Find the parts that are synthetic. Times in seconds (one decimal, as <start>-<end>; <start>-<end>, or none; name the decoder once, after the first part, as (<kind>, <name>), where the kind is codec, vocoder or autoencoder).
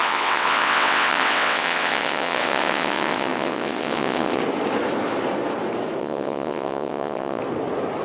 0.0-4.4 (vocoder, WaveNeXt); 6.0-7.4